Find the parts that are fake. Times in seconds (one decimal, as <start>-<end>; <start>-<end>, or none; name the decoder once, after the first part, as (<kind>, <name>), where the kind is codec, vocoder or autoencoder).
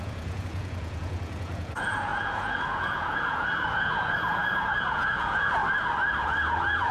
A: 0.0-5.6 (vocoder, Vocos); 6.2-6.9